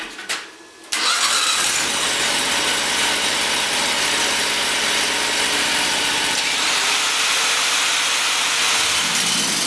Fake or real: real